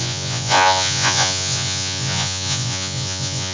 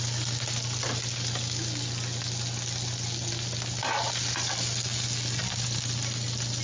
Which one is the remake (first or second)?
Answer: first